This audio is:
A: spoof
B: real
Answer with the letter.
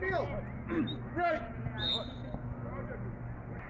B